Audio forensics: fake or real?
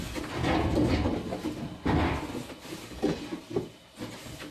real